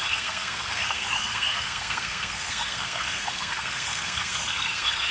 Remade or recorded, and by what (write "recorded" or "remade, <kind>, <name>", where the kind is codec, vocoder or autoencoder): remade, codec, SNAC